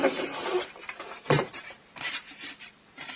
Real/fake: fake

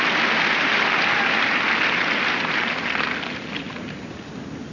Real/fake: real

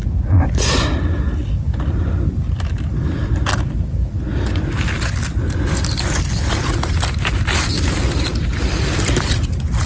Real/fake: real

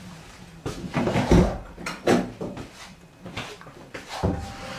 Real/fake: fake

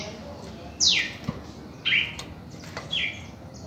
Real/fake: real